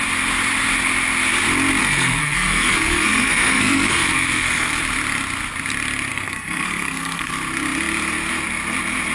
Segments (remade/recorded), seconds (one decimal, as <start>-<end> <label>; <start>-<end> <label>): 0.0-1.8 recorded; 1.8-4.8 remade; 4.8-6.1 recorded; 6.1-7.3 remade; 7.3-9.1 recorded